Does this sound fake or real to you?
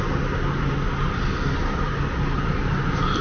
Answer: real